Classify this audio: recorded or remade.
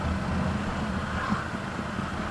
recorded